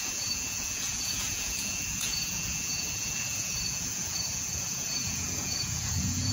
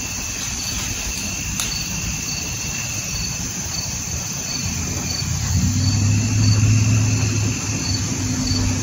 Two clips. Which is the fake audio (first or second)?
first